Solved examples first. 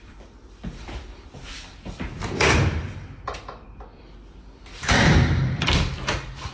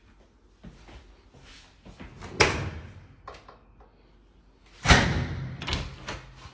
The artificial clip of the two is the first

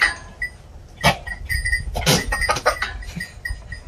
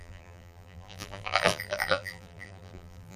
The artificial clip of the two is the second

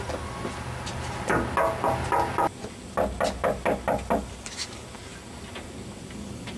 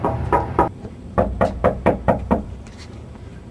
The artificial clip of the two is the second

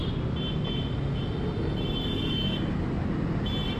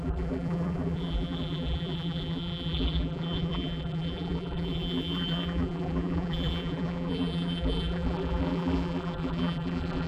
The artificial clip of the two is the second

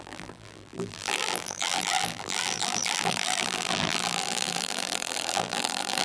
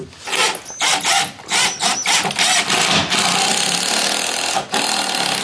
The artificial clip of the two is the first